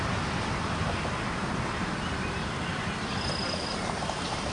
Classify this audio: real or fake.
real